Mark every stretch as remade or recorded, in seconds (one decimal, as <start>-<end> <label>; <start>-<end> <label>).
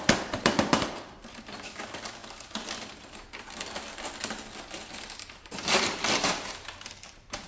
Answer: 0.0-2.2 remade; 2.2-4.1 recorded; 4.1-7.5 remade